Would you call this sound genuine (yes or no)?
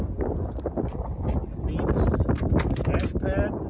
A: yes